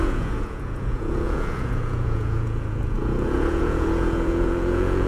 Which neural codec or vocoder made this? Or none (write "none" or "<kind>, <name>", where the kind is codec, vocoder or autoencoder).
vocoder, Vocos